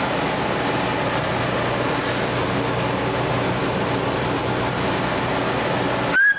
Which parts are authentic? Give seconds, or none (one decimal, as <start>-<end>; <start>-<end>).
0.0-6.4